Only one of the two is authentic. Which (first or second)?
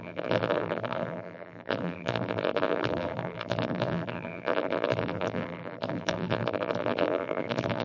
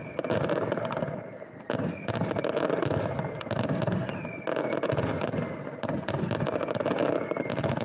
second